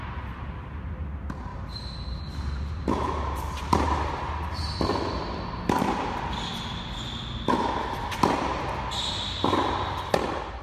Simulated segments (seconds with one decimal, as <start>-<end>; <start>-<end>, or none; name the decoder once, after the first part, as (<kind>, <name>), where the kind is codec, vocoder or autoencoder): 1.5-4.2 (vocoder, BigVGAN v2)